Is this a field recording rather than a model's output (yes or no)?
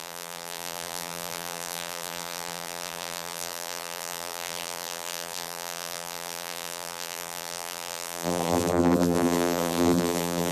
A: no